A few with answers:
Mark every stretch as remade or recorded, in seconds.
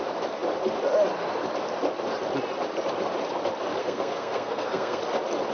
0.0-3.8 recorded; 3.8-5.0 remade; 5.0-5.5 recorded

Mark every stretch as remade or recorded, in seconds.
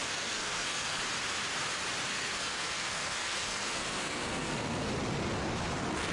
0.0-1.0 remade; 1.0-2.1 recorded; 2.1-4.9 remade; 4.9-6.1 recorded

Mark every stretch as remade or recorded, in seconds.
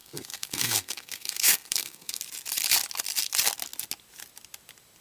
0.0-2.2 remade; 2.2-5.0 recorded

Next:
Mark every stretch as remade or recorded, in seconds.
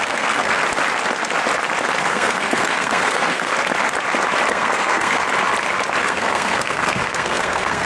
0.0-0.6 remade; 0.6-2.0 recorded; 2.0-3.5 remade; 3.5-4.5 recorded; 4.5-5.2 remade; 5.2-6.0 recorded; 6.0-7.8 remade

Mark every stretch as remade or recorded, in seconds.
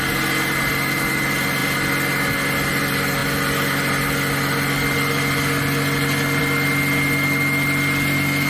0.0-8.5 recorded